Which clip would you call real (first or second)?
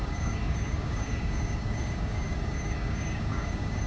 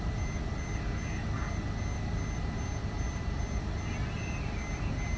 second